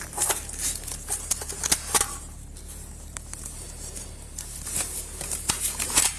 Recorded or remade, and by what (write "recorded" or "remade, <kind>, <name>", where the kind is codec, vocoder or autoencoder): remade, vocoder, BigVGAN v2